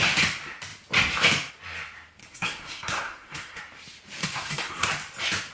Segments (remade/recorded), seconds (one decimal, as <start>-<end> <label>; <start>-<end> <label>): 0.0-2.2 recorded; 2.2-3.6 remade; 3.6-4.2 recorded; 4.2-4.9 remade; 4.9-5.5 recorded

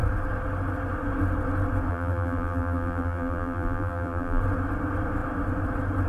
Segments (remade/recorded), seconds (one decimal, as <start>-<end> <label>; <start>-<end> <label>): 0.0-1.9 recorded; 1.9-4.4 remade; 4.4-6.1 recorded

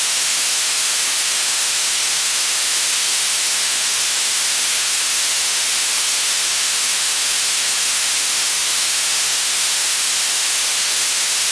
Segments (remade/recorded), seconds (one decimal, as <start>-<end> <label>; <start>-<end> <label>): 0.0-11.5 remade

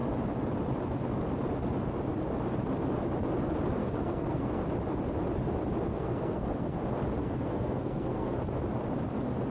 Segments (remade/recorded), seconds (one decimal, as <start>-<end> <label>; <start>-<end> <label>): 0.0-3.8 recorded; 3.8-4.6 remade; 4.6-5.9 recorded; 5.9-6.8 remade; 6.8-7.2 recorded; 7.2-8.4 remade; 8.4-9.5 recorded

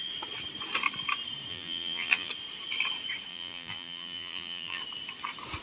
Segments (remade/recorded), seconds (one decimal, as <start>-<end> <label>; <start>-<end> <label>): 0.0-1.5 recorded; 1.5-2.3 remade; 2.3-3.3 recorded; 3.3-4.8 remade; 4.8-5.6 recorded

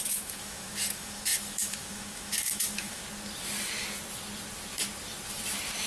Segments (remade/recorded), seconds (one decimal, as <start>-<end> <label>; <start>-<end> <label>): 0.0-3.0 remade; 3.0-5.9 recorded

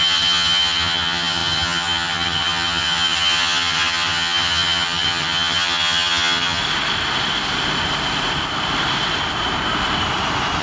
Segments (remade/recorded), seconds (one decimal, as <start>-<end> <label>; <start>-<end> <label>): 0.0-6.6 remade; 6.6-10.6 recorded